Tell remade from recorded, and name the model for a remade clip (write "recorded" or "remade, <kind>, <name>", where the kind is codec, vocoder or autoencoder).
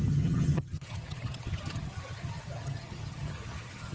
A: remade, vocoder, HiFi-GAN